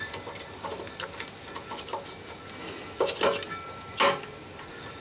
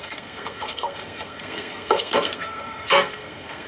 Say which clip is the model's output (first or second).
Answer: second